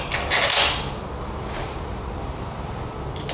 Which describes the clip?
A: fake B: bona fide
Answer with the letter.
B